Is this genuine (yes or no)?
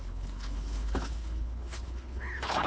no